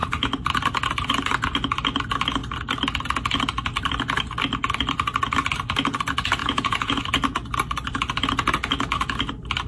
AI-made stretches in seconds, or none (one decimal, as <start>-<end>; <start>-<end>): 6.4-7.0